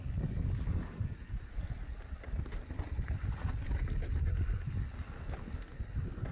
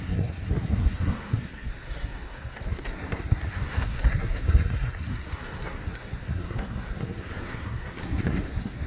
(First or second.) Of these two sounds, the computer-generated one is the second